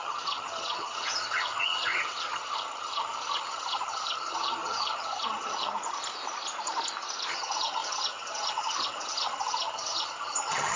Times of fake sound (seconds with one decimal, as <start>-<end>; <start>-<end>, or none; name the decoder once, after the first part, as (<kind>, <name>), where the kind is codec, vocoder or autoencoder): 0.0-5.7 (vocoder, HiFi-GAN); 7.3-10.8